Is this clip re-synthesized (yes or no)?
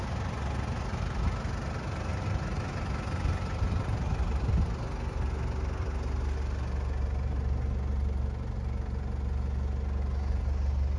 no